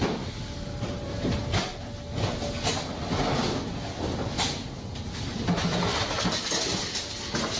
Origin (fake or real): real